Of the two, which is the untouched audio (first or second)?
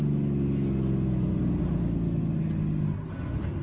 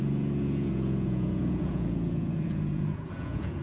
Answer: first